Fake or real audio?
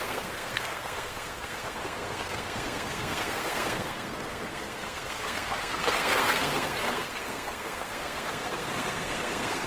fake